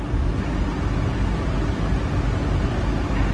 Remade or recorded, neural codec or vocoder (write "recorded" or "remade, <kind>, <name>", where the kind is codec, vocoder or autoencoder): recorded